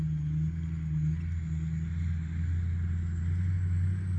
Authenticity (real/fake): real